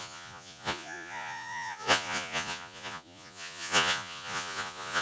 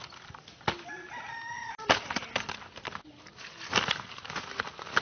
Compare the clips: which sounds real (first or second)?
second